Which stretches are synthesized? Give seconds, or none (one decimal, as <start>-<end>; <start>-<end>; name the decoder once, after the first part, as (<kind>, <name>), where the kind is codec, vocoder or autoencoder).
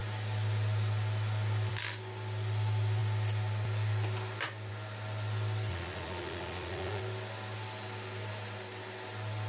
5.7-7.0 (vocoder, Vocos)